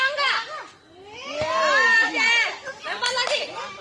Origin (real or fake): real